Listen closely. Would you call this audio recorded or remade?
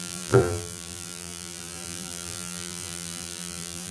remade